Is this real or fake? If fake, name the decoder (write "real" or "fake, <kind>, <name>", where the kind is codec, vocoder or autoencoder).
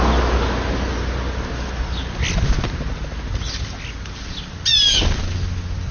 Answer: real